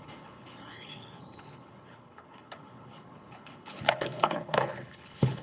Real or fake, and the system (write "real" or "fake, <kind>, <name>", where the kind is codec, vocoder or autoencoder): fake, codec, HILCodec